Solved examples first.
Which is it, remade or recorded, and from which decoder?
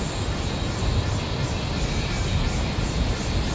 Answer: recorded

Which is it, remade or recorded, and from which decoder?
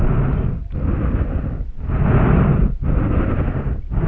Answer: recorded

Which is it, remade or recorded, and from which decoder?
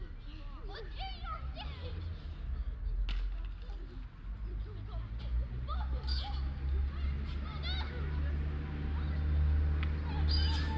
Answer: recorded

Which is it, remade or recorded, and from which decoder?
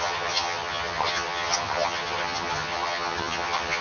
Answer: remade, vocoder, HiFi-GAN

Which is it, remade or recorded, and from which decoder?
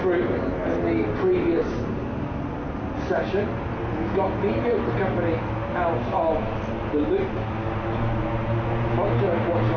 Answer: recorded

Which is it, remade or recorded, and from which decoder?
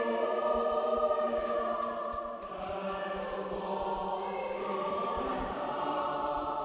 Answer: recorded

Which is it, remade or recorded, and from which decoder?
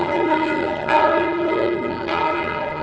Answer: remade, vocoder, HiFi-GAN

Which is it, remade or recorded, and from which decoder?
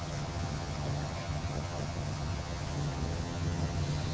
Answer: remade, vocoder, HiFi-GAN